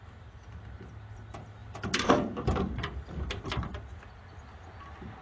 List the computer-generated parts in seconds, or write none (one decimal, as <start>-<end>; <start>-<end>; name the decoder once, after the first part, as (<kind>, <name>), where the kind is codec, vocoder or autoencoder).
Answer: none